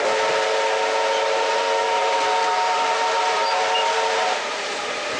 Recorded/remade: recorded